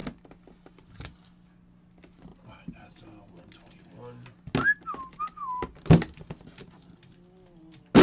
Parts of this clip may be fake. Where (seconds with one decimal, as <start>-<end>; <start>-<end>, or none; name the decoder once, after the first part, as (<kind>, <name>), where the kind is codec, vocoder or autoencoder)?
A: none